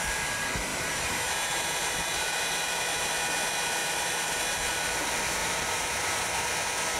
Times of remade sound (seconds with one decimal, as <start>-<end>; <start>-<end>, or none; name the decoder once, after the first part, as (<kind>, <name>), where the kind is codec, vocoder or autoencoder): 0.7-3.1 (vocoder, BigVGAN v2); 3.8-4.4; 5.4-6.3